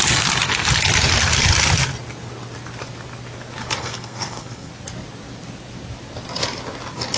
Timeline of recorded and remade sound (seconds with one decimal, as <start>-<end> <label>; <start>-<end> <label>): 0.0-3.8 recorded; 3.8-4.7 remade; 4.7-7.2 recorded